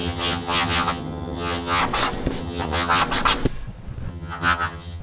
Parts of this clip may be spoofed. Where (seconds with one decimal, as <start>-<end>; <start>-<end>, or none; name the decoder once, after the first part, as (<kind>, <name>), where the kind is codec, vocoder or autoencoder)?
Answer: 0.0-1.8 (vocoder, HiFi-GAN); 2.4-3.0; 4.1-5.0